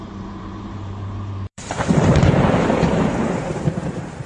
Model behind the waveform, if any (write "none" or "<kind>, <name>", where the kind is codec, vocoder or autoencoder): vocoder, BigVGAN v2